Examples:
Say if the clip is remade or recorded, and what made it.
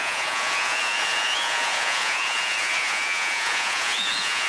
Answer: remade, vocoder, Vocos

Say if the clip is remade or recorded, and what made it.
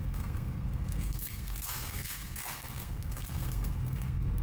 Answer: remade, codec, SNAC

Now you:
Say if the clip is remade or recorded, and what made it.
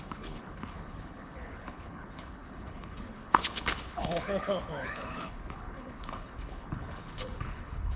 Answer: remade, codec, HILCodec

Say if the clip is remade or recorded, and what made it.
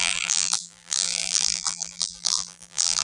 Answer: remade, vocoder, BigVGAN v2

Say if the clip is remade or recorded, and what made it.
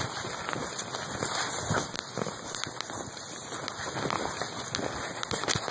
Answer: recorded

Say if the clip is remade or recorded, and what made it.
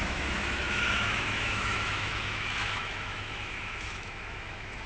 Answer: remade, autoencoder, DAC-VAE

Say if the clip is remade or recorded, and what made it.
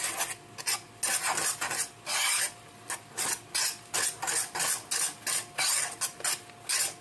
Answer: recorded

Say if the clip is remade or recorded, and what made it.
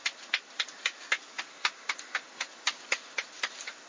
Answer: recorded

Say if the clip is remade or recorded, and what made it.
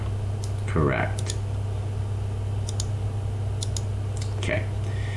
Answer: recorded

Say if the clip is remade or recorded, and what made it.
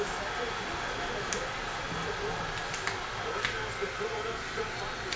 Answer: recorded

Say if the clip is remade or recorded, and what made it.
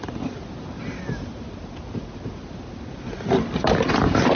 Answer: recorded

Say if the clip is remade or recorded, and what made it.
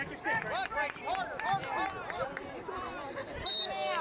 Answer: recorded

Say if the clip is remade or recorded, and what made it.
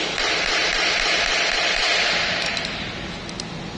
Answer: recorded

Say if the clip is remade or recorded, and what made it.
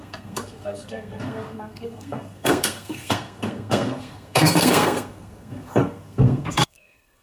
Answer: remade, codec, SNAC